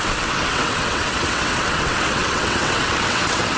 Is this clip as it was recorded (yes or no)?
no